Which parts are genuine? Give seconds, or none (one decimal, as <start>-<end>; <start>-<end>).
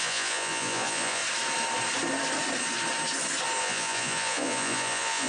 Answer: 1.2-3.6